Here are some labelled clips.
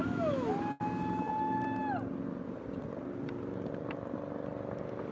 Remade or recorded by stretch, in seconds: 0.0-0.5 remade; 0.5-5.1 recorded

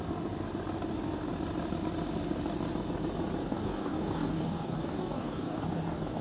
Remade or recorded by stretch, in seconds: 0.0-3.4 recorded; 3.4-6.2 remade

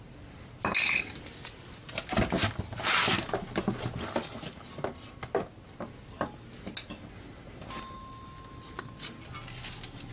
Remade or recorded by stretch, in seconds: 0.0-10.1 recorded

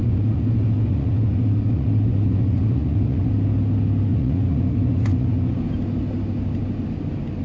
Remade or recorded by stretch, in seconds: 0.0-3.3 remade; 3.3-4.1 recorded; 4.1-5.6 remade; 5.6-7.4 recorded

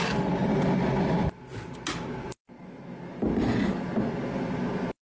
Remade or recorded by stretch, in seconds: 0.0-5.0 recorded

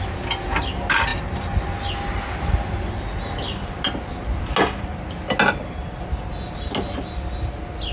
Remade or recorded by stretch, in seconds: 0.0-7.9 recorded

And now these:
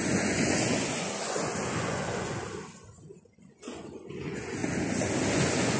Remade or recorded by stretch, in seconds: 0.0-2.4 remade; 2.4-3.4 recorded; 3.4-4.6 remade; 4.6-5.3 recorded; 5.3-5.8 remade

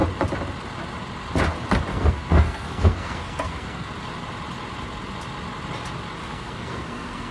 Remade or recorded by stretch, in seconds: 0.0-1.9 recorded; 1.9-3.9 remade; 3.9-6.2 recorded; 6.2-7.3 remade